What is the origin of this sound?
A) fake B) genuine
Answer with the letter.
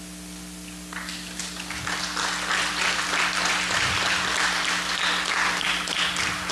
B